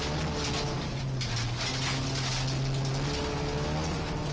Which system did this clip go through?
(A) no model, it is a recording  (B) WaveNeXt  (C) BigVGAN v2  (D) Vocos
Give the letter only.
A